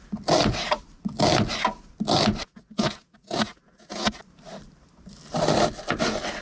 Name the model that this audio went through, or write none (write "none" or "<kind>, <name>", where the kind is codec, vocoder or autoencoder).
none